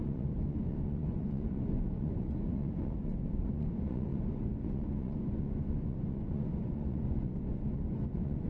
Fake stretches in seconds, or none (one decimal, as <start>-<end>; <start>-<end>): 0.0-8.5